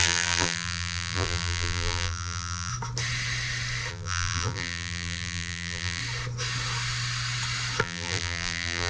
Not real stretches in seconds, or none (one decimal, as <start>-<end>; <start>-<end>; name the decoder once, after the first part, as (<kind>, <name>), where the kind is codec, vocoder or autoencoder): 0.0-2.7 (vocoder, BigVGAN v2); 3.9-6.0; 7.8-8.9